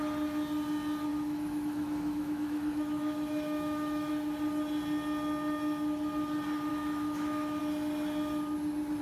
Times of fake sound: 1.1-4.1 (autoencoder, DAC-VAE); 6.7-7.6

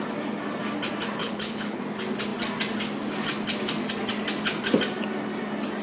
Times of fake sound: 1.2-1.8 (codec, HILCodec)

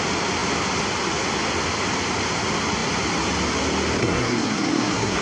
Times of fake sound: 4.0-5.2 (codec, SNAC)

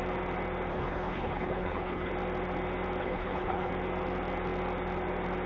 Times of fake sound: 0.7-2.1 (codec, HILCodec); 3.0-3.7

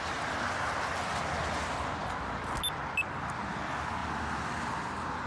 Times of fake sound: none

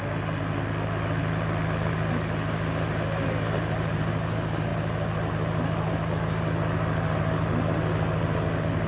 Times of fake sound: none